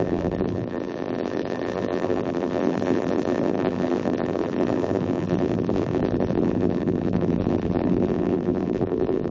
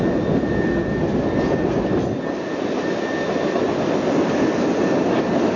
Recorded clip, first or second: second